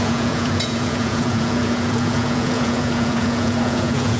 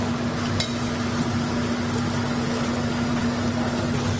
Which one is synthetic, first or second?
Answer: first